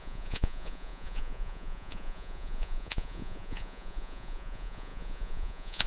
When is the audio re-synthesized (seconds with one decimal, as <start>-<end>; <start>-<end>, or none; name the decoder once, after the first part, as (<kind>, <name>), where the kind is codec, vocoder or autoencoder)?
0.0-5.9 (vocoder, Vocos)